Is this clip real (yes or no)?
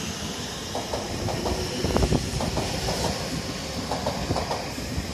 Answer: no